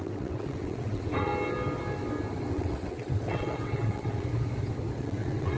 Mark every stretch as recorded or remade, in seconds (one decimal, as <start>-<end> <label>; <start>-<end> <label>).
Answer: 0.0-1.3 remade; 1.3-2.5 recorded; 2.5-4.3 remade; 4.3-5.0 recorded; 5.0-5.6 remade